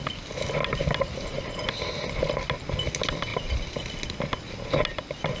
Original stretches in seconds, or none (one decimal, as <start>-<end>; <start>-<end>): 0.0-5.4